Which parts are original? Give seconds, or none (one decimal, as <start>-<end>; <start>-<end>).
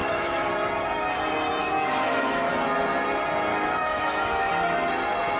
0.5-1.6; 2.5-3.5; 4.5-5.4